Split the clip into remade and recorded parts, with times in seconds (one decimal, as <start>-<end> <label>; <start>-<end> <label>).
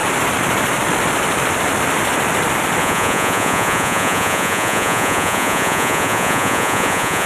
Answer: 0.0-2.8 recorded; 2.8-7.3 remade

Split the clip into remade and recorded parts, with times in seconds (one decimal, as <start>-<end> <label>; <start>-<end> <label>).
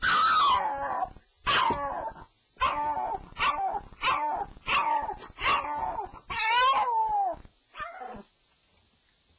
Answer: 0.0-9.4 recorded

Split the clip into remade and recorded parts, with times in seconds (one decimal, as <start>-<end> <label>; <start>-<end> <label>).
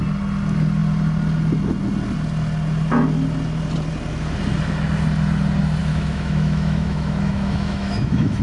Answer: 0.0-5.8 recorded; 5.8-8.4 remade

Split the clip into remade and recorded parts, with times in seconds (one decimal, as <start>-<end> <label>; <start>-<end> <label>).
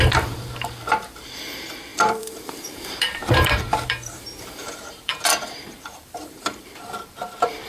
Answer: 0.0-5.1 remade; 5.1-5.7 recorded; 5.7-7.7 remade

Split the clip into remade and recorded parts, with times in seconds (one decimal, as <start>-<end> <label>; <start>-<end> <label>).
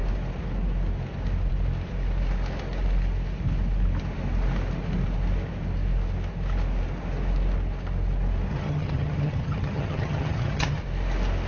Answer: 0.0-8.5 recorded; 8.5-10.8 remade; 10.8-11.5 recorded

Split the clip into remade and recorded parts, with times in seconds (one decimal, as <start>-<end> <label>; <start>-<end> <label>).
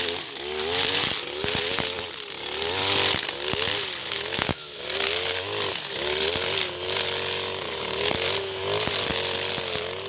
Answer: 0.0-4.0 recorded; 4.0-4.8 remade; 4.8-10.1 recorded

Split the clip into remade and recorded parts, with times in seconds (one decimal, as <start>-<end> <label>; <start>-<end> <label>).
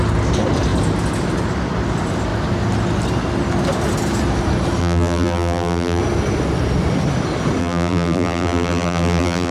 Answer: 0.0-4.8 recorded; 4.8-6.0 remade; 6.0-7.6 recorded; 7.6-9.5 remade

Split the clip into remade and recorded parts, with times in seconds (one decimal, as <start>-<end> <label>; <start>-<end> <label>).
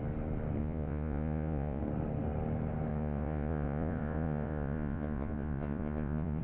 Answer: 0.0-0.6 recorded; 0.6-1.8 remade; 1.8-2.9 recorded; 2.9-6.4 remade